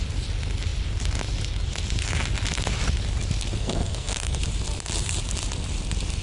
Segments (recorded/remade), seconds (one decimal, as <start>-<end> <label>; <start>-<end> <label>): 0.0-3.6 recorded; 3.6-4.4 remade; 4.4-6.2 recorded